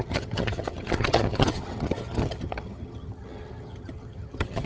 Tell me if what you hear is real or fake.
fake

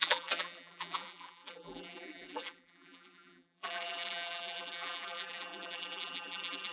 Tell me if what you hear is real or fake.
fake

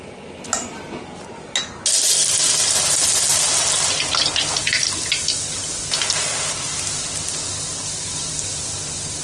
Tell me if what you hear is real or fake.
real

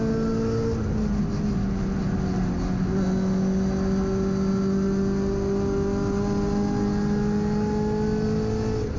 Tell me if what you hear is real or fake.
real